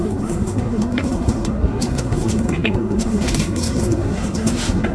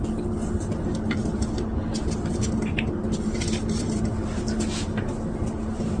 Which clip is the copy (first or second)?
first